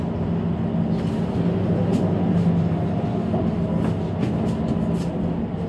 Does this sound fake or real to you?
real